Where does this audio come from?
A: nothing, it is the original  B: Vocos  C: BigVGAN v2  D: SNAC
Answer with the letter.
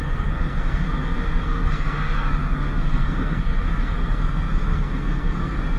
D